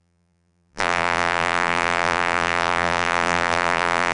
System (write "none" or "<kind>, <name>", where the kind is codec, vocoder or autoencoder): vocoder, BigVGAN v2